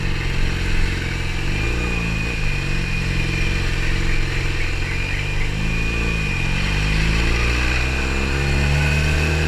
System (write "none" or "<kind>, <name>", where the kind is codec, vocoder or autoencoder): none